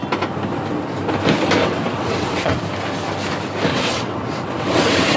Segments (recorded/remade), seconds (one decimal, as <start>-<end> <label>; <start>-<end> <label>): 0.0-1.6 recorded; 1.6-2.6 remade; 2.6-3.7 recorded; 3.7-5.2 remade